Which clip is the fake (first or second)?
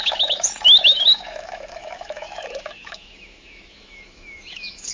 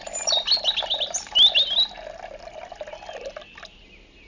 first